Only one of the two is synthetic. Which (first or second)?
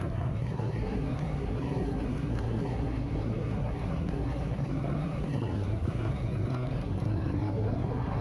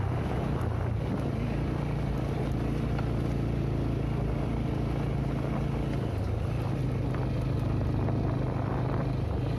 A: first